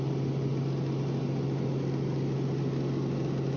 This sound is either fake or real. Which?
real